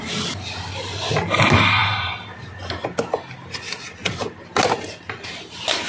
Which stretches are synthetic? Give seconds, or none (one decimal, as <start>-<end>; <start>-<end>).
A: none